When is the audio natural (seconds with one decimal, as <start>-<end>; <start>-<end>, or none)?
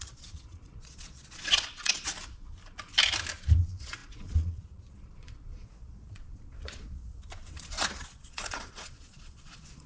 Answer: 2.1-3.6; 7.0-7.5